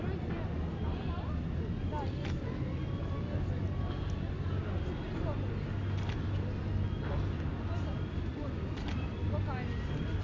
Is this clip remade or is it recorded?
recorded